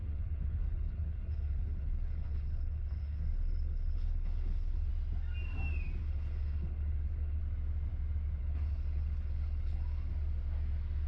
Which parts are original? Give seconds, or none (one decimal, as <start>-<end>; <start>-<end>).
4.9-6.0; 7.4-8.4; 10.1-11.1